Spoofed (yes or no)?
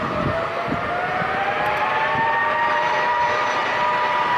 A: yes